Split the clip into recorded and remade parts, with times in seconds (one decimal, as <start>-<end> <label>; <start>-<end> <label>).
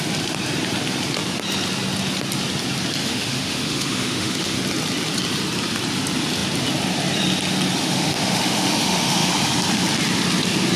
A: 0.0-3.0 recorded; 3.0-4.6 remade; 4.6-7.8 recorded; 7.8-9.3 remade; 9.3-10.8 recorded